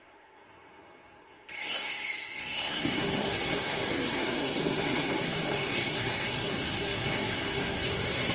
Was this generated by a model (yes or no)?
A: yes